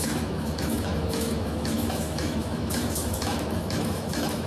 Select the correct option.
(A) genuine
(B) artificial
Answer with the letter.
B